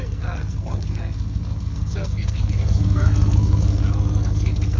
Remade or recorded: remade